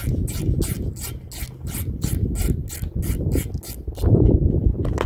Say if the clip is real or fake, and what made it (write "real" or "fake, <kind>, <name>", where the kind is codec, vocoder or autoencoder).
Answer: real